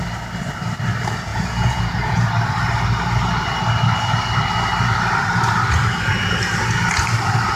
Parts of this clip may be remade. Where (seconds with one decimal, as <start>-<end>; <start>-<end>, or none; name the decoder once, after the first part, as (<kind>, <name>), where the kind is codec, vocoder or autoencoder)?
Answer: 1.3-2.3 (vocoder, Vocos)